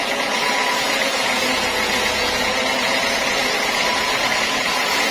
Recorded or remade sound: remade